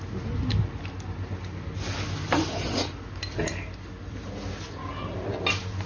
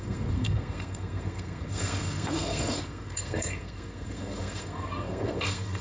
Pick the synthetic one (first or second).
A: second